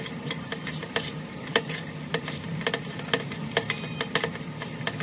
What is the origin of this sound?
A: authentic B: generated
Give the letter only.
A